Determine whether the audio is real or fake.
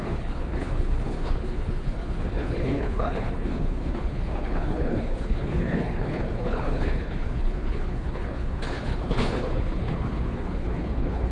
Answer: fake